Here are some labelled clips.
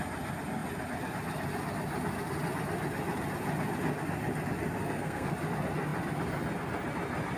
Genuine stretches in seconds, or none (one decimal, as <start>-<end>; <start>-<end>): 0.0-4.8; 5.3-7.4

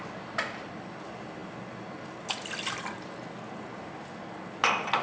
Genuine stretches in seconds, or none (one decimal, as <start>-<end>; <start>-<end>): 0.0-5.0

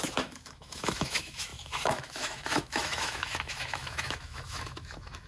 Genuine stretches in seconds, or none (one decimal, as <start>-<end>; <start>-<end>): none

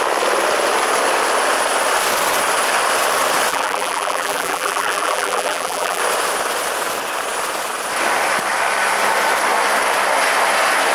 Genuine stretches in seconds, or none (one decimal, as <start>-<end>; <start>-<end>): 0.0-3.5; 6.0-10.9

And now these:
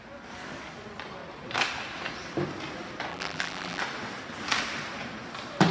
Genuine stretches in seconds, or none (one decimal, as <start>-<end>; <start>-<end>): 0.0-3.1; 3.8-5.7

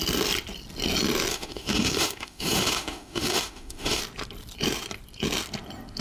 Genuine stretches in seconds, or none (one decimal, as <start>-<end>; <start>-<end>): 0.0-1.3; 4.0-6.0

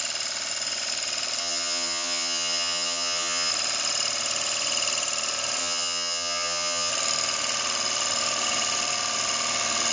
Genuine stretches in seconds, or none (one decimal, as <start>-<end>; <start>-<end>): 0.0-1.4; 3.5-5.6; 6.9-9.9